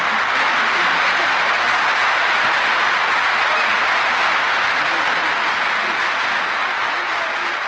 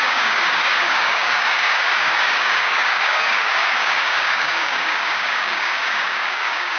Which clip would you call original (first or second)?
first